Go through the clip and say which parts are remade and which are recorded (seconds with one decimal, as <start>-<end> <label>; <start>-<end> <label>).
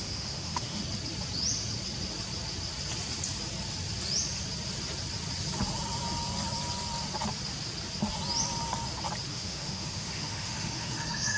0.0-0.8 remade; 0.8-9.3 recorded; 9.3-11.4 remade